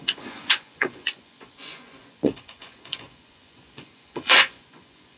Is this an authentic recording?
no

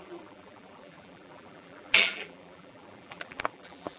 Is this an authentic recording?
no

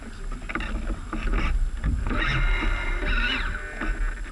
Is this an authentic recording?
yes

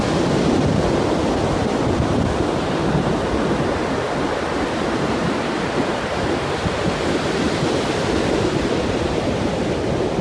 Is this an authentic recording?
no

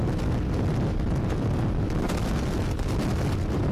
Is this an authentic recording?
yes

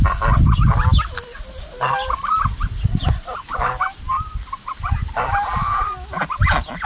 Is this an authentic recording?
yes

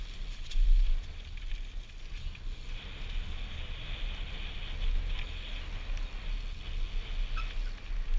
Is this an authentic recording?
yes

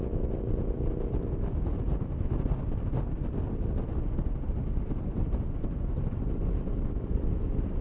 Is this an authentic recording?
yes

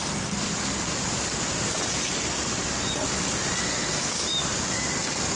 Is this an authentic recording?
yes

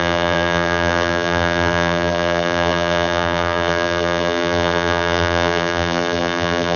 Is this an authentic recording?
no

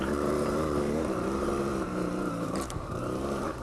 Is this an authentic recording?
no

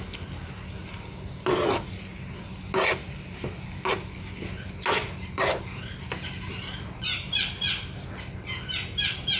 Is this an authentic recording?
yes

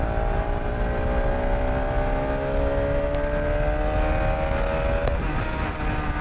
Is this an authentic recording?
yes